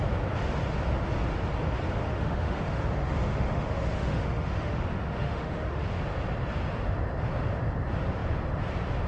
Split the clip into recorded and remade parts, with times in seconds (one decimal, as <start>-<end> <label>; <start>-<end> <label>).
0.0-2.0 recorded; 2.0-5.9 remade; 5.9-9.1 recorded